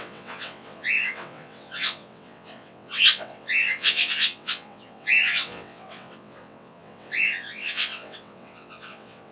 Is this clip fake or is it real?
fake